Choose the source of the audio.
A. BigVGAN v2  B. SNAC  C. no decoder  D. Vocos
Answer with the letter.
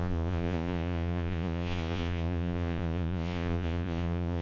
D